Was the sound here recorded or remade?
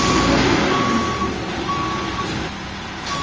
recorded